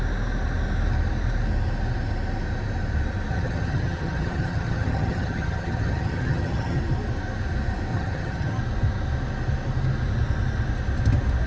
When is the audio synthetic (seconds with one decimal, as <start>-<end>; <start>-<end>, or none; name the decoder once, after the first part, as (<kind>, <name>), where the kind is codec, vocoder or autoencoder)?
3.3-6.8 (vocoder, HiFi-GAN); 7.9-8.6